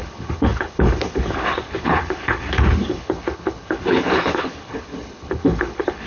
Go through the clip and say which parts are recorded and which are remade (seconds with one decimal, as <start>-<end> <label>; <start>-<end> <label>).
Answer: 0.0-6.1 remade

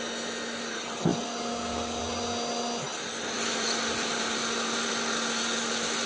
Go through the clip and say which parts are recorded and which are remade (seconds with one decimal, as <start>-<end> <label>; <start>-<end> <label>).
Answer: 0.0-6.1 recorded